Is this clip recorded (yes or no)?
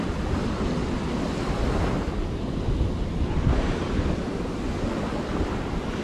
yes